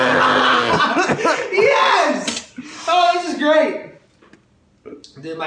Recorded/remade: recorded